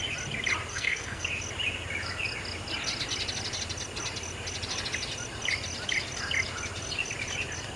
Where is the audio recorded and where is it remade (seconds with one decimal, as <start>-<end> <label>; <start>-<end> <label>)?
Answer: 0.0-0.7 recorded; 0.7-1.3 remade; 1.3-7.8 recorded